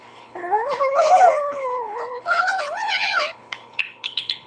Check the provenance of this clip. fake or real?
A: fake